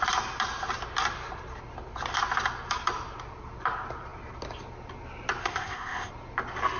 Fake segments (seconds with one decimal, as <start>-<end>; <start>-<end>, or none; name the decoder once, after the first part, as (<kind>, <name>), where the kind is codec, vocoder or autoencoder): 5.4-6.1 (codec, ZipCodec)